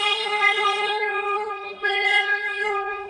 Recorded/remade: remade